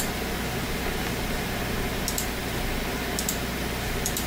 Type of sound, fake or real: real